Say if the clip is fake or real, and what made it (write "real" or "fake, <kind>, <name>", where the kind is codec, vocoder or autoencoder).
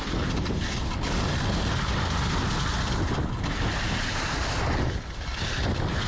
real